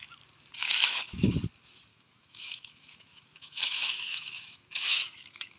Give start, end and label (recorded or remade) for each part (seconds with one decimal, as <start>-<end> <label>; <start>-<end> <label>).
0.0-0.6 recorded; 0.6-1.4 remade; 1.4-1.9 recorded; 1.9-5.6 remade